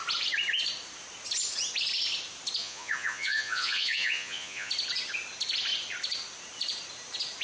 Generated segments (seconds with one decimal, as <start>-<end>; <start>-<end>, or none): 2.6-4.7